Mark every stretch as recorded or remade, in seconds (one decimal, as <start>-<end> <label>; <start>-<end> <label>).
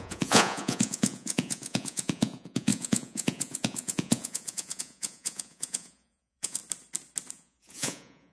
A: 0.0-6.6 remade; 6.6-7.3 recorded; 7.3-8.3 remade